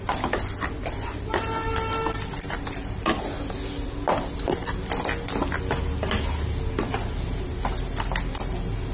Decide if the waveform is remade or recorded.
recorded